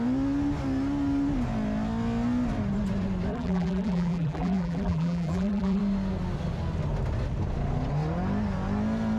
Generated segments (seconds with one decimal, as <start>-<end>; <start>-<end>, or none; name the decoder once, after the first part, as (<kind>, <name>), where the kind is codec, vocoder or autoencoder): 3.3-5.8 (vocoder, BigVGAN v2)